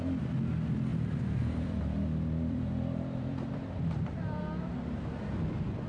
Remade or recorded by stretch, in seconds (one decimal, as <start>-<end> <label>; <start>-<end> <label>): 0.0-0.9 recorded; 0.9-4.4 remade; 4.4-5.9 recorded